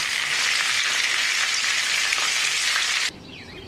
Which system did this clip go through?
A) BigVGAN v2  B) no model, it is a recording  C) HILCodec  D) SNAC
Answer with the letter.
B